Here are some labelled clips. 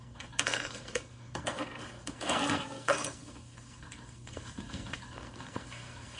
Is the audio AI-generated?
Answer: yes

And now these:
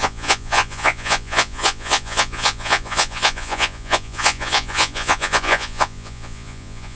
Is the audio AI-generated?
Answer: yes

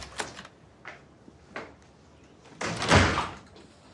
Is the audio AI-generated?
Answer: no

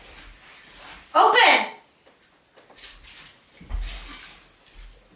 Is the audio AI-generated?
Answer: no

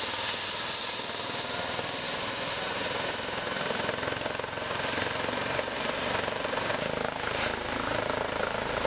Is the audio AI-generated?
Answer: no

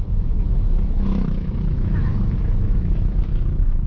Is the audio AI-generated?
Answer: yes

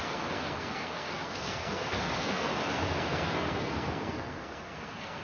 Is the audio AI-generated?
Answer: yes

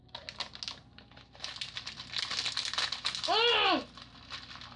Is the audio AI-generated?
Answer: no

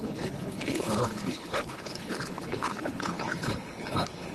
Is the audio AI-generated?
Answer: yes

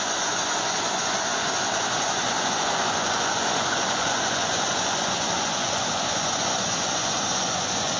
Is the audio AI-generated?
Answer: yes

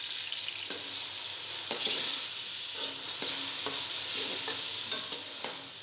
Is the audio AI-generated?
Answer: no